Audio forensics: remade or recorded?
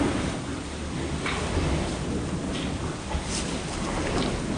recorded